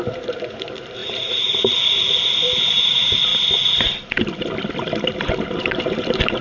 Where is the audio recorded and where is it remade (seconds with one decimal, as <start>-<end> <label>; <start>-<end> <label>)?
0.0-3.3 remade; 3.3-5.2 recorded; 5.2-6.4 remade